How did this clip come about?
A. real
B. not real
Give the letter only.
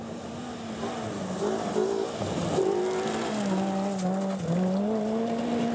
A